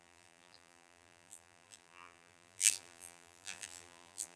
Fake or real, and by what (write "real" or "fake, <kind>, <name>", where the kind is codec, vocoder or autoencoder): fake, vocoder, BigVGAN v2